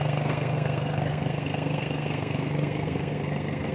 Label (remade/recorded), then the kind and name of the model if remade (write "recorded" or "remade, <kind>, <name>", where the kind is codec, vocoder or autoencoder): remade, codec, SNAC